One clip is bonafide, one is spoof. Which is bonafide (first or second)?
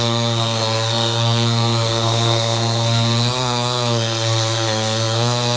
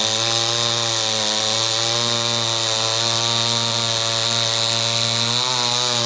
second